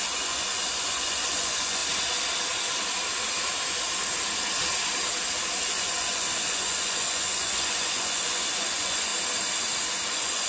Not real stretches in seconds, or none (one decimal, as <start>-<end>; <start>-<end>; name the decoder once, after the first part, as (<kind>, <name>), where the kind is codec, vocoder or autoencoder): 0.0-1.8 (vocoder, Vocos); 5.6-9.1; 10.1-10.5